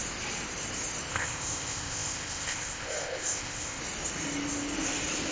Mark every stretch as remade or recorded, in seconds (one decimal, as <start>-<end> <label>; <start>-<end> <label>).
0.0-1.1 recorded; 1.1-3.8 remade; 3.8-5.3 recorded